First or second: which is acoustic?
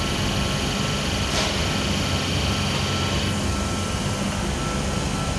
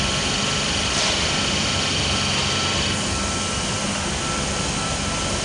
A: first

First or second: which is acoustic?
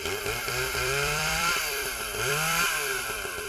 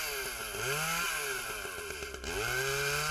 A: second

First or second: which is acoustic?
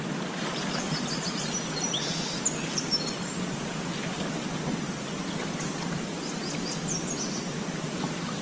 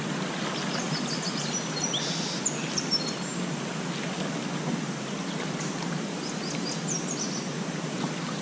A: second